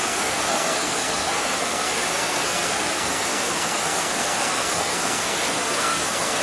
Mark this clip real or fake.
fake